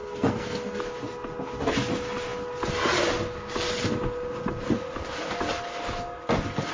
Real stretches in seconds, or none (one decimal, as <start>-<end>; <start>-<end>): 0.8-6.7